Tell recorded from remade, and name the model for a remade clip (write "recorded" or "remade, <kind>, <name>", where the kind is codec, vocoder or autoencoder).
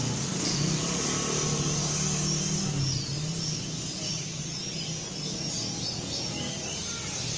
recorded